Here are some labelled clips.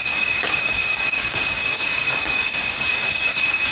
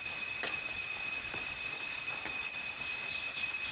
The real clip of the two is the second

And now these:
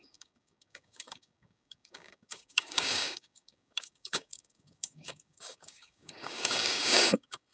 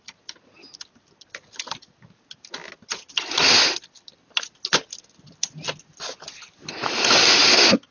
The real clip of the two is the second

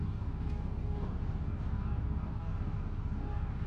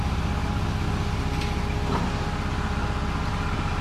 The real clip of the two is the second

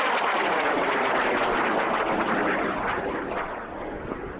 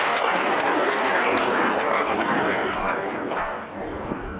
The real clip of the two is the first